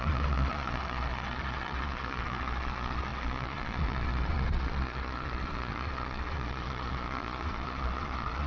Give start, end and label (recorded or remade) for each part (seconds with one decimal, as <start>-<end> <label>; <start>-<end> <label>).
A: 0.0-8.5 remade

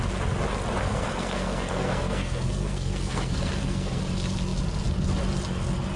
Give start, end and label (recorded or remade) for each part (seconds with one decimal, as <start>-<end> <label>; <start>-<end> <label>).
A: 0.0-0.8 recorded; 0.8-4.0 remade; 4.0-6.0 recorded

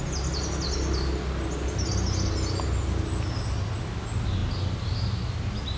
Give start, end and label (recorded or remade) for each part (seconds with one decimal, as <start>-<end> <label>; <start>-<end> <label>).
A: 0.0-5.8 recorded

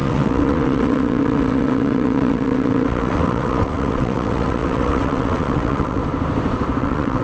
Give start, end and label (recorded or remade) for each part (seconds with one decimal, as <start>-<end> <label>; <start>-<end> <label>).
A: 0.0-6.0 remade; 6.0-6.8 recorded; 6.8-7.2 remade

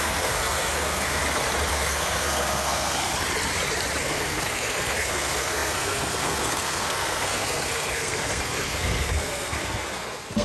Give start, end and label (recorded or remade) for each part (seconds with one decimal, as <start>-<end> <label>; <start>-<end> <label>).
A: 0.0-1.2 remade; 1.2-1.7 recorded; 1.7-3.1 remade; 3.1-4.0 recorded; 4.0-10.4 remade